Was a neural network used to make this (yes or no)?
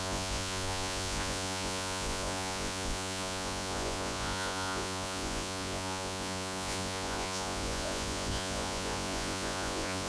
yes